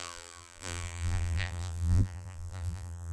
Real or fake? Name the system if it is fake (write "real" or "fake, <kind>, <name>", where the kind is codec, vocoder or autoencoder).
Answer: fake, vocoder, BigVGAN v2